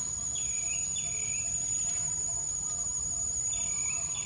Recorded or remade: recorded